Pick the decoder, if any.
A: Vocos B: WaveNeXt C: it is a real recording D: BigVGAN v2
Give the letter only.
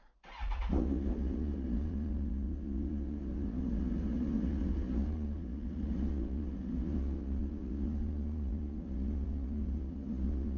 A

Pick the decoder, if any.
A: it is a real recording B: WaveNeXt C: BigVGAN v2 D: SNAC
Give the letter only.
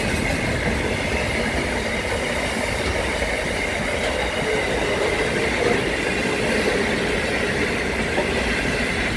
A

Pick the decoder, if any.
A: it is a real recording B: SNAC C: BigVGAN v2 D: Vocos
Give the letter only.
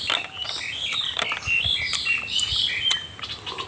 A